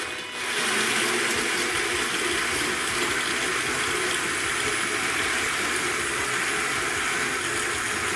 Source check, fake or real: real